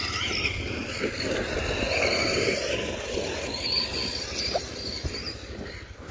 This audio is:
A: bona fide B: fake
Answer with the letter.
A